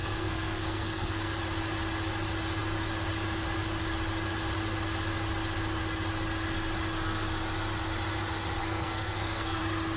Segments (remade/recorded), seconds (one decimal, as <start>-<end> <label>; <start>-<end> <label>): 0.0-1.4 remade; 1.4-8.6 recorded; 8.6-9.6 remade; 9.6-10.0 recorded